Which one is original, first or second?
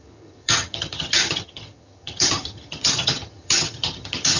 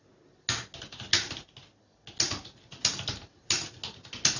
second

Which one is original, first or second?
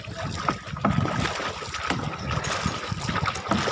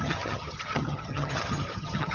first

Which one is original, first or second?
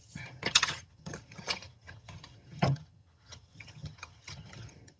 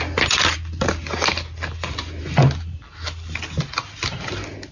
second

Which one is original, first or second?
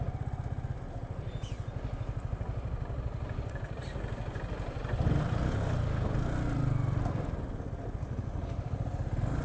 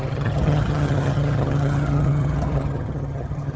first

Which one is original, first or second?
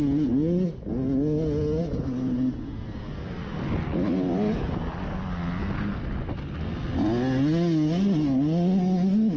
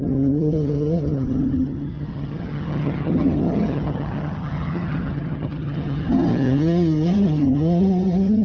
first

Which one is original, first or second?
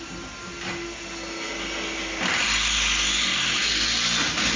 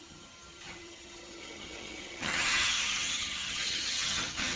first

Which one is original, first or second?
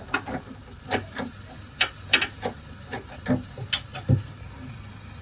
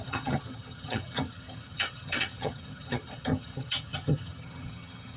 first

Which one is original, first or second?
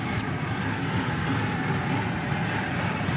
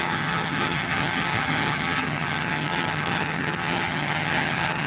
first